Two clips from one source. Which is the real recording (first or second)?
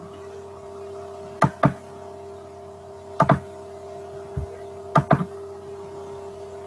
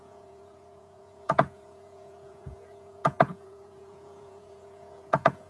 first